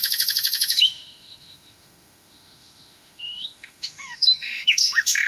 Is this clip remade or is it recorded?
remade